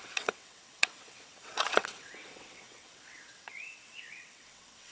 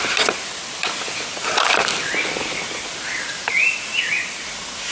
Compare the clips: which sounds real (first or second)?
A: second